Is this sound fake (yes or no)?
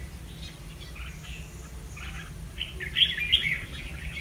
no